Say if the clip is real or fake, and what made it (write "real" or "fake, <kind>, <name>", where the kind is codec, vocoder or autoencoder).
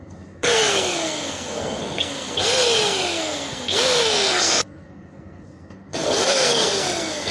fake, codec, SNAC